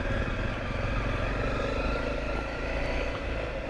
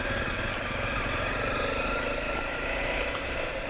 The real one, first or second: first